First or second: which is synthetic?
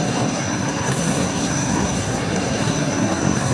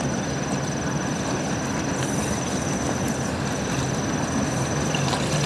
first